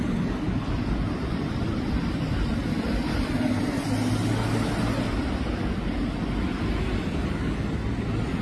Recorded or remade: recorded